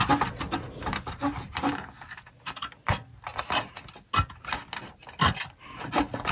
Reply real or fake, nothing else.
real